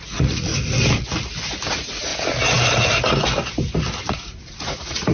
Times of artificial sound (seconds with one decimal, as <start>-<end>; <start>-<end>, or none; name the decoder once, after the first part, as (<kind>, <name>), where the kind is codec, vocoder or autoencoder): 0.0-0.5 (vocoder, Vocos); 1.7-2.1; 4.1-5.1